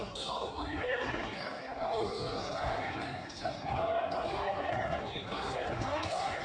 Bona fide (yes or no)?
no